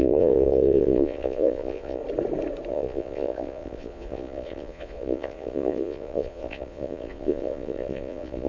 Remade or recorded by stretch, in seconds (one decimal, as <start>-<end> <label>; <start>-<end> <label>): 0.0-2.0 remade; 2.0-2.7 recorded; 2.7-8.5 remade